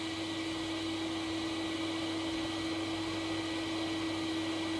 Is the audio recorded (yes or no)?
yes